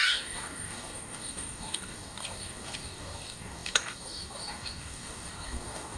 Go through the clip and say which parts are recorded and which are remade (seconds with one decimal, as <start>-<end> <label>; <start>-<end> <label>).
0.0-6.0 remade